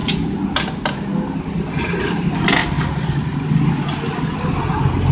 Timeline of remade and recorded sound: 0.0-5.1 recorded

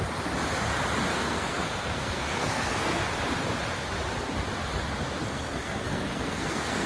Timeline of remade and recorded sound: 0.0-1.1 recorded; 1.1-3.0 remade; 3.0-5.2 recorded; 5.2-6.9 remade

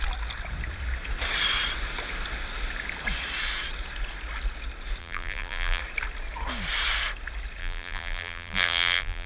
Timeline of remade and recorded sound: 0.0-5.0 recorded; 5.0-5.8 remade; 5.8-7.6 recorded; 7.6-9.3 remade

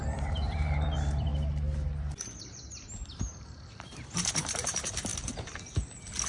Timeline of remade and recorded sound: 0.0-1.3 remade; 1.3-3.1 recorded; 3.1-5.1 remade; 5.1-6.3 recorded

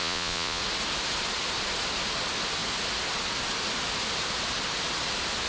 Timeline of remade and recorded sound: 0.0-0.6 remade; 0.6-5.5 recorded

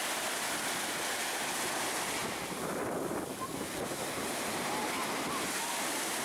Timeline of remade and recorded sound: 0.0-6.2 recorded